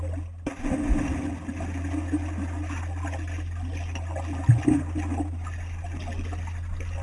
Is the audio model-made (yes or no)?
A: no